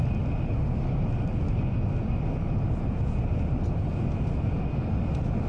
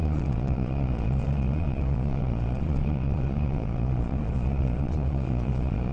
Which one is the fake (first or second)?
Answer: second